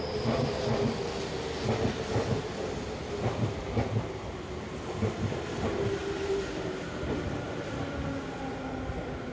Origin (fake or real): real